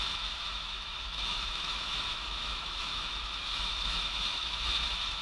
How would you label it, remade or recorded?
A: remade